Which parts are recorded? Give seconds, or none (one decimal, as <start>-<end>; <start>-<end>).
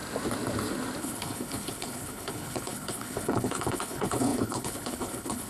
0.0-1.0